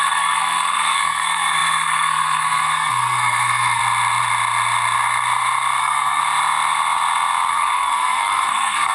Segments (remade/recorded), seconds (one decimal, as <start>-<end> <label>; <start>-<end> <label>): 0.0-3.8 remade; 3.8-5.8 recorded; 5.8-6.2 remade; 6.2-7.5 recorded; 7.5-8.9 remade